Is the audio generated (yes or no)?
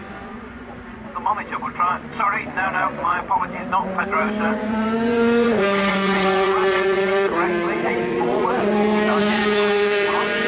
yes